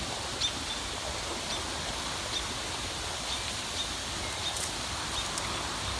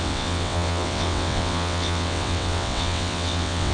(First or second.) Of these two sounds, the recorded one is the first